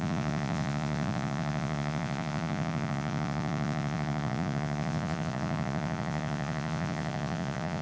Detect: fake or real fake